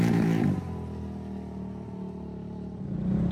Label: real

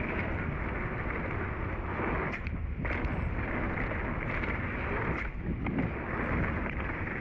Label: real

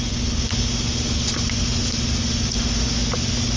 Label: real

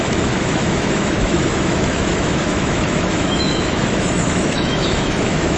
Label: fake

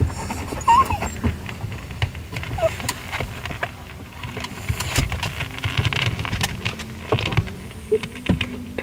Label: real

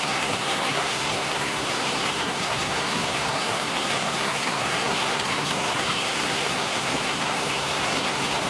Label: fake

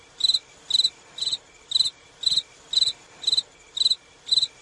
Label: real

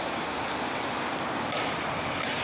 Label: real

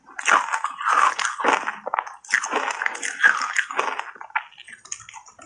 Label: real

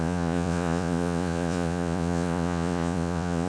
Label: fake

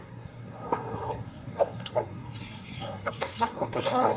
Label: fake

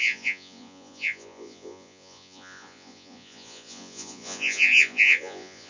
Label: fake